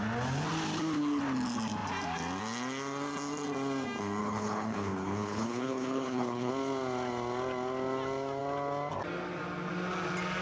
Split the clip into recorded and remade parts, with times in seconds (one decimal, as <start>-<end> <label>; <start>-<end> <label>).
0.0-4.2 recorded; 4.2-6.5 remade; 6.5-10.4 recorded